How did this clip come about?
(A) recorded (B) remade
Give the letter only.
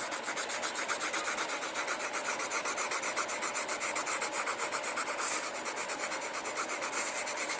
A